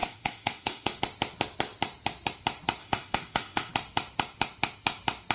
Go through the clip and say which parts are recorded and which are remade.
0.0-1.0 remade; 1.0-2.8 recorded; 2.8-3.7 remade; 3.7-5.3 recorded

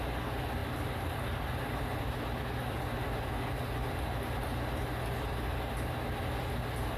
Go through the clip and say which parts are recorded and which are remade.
0.0-7.0 recorded

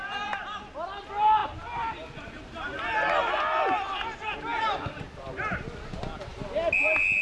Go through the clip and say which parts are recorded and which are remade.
0.0-7.2 recorded